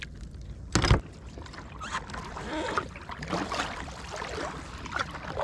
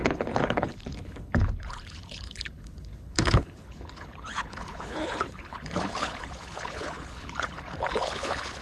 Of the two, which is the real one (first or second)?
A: first